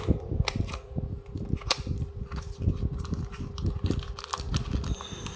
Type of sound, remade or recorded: recorded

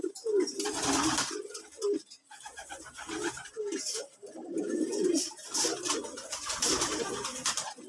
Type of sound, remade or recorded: remade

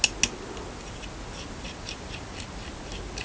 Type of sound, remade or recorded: recorded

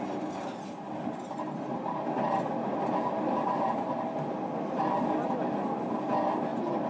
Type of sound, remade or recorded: recorded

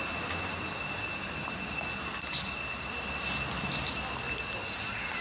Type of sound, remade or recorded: recorded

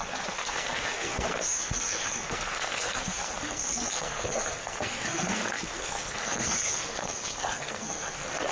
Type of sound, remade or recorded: remade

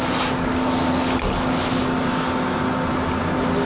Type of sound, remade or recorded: recorded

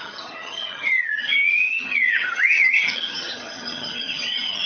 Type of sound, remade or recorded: remade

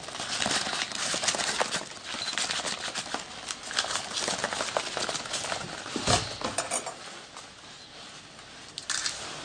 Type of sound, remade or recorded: recorded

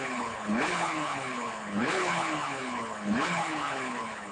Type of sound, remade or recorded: remade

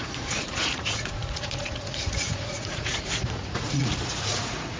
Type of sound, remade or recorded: remade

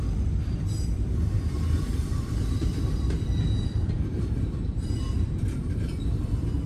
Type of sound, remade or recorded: remade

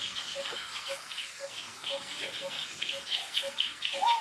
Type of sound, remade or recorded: remade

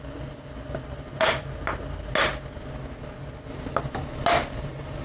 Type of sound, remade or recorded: recorded